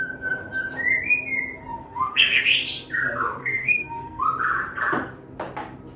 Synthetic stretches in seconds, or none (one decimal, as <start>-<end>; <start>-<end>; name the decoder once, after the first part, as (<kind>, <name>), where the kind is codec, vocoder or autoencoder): 1.8-2.4 (codec, SNAC); 3.4-4.2

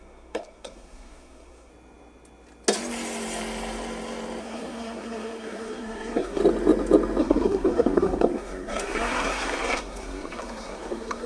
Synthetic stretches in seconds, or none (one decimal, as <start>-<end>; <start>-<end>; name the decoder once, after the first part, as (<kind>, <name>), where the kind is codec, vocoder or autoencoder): 0.0-1.7 (codec, SNAC); 4.4-6.4; 7.2-11.3

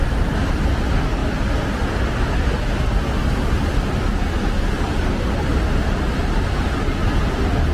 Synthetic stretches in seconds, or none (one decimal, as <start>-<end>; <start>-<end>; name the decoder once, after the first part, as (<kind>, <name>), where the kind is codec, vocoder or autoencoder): none

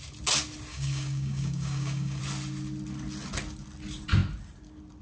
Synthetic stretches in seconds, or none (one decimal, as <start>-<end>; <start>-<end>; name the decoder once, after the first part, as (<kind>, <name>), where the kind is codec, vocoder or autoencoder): 0.7-2.2 (codec, DAC)

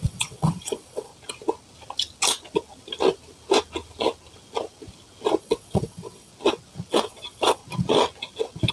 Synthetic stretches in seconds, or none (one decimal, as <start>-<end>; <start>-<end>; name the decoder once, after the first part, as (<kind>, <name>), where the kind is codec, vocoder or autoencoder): 0.0-1.1 (vocoder, WaveNeXt); 5.4-6.3; 6.9-7.6

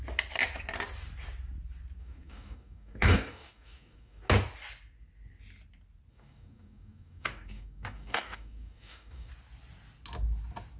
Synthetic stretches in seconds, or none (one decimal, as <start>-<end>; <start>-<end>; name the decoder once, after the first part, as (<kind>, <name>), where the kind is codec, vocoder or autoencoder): 2.0-4.3 (codec, DAC); 6.1-9.3